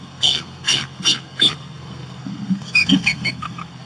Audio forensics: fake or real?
fake